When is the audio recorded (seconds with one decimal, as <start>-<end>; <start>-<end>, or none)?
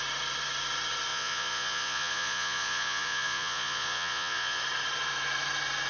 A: 0.0-1.1; 4.6-5.9